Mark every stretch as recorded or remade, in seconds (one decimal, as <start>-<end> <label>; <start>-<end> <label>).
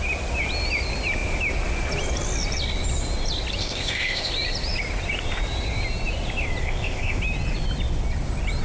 0.0-3.6 recorded; 3.6-4.3 remade; 4.3-6.6 recorded; 6.6-7.2 remade; 7.2-8.6 recorded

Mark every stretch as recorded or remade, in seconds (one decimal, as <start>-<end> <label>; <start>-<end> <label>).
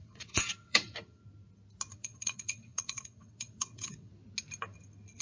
0.0-1.2 remade; 1.2-1.9 recorded; 1.9-4.1 remade; 4.1-5.2 recorded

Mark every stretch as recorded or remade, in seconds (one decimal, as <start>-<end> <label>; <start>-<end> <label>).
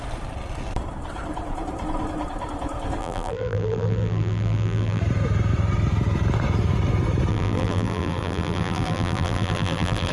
0.0-3.0 recorded; 3.0-5.0 remade; 5.0-7.3 recorded; 7.3-10.1 remade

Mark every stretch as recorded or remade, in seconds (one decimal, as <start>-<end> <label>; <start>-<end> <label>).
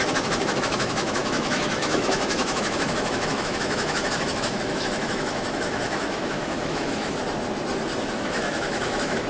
0.0-7.2 remade; 7.2-8.1 recorded; 8.1-9.3 remade